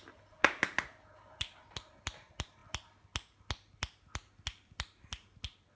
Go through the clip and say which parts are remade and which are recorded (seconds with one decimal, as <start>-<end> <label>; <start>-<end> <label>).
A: 0.0-5.8 recorded